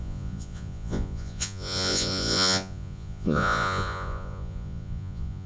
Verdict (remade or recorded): remade